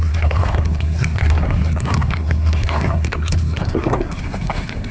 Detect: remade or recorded remade